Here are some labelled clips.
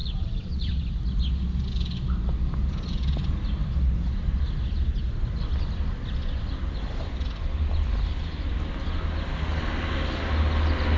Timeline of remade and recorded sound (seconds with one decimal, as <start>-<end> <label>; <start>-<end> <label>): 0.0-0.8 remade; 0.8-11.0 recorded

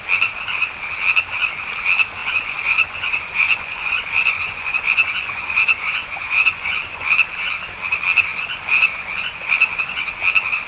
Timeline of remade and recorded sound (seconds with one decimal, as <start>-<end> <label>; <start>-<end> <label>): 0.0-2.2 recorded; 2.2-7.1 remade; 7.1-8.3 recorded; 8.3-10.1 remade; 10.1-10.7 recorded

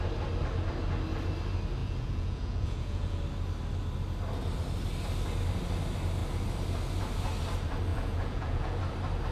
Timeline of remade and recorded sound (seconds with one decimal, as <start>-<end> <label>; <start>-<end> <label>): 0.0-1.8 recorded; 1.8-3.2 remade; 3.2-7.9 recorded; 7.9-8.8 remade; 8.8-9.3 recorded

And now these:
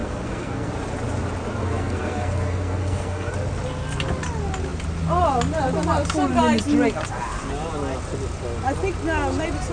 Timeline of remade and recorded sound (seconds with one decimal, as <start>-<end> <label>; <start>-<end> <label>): 0.0-0.7 remade; 0.7-1.6 recorded; 1.6-3.3 remade; 3.3-9.7 recorded

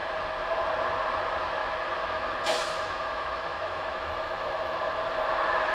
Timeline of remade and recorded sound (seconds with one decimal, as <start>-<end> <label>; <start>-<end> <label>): 0.0-1.6 recorded; 1.6-5.0 remade; 5.0-5.7 recorded

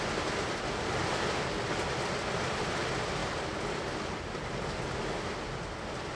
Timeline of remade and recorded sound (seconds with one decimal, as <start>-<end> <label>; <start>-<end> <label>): 0.0-6.1 recorded